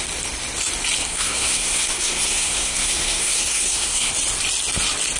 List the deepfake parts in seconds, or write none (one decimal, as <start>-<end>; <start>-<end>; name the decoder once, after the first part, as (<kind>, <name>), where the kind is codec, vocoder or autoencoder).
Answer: 1.0-4.1 (codec, SNAC)